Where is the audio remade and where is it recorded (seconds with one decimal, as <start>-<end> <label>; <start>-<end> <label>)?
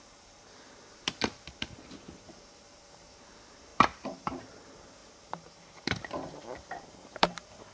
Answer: 0.0-7.7 remade